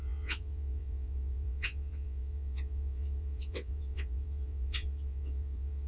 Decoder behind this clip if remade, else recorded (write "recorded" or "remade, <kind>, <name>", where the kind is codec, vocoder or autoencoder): remade, vocoder, WaveNeXt